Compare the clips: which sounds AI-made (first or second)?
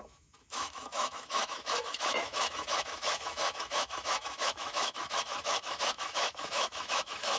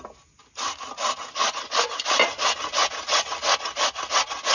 first